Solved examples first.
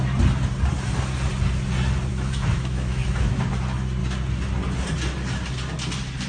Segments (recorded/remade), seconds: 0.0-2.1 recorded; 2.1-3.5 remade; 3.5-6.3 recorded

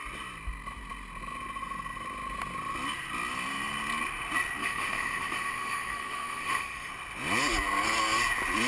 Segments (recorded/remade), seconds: 0.0-4.6 recorded; 4.6-6.9 remade; 6.9-8.7 recorded

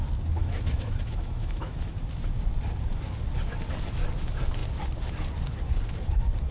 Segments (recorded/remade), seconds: 0.0-0.4 recorded; 0.4-1.9 remade; 1.9-6.5 recorded

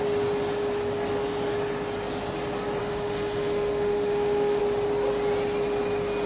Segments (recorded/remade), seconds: 0.0-2.8 recorded; 2.8-4.6 remade; 4.6-6.3 recorded

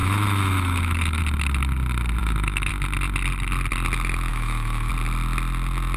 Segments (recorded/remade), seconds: 0.0-1.2 remade; 1.2-2.2 recorded; 2.2-2.7 remade; 2.7-4.3 recorded; 4.3-4.9 remade; 4.9-6.0 recorded